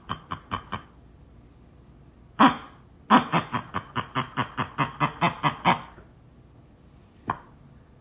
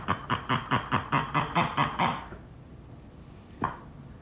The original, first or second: first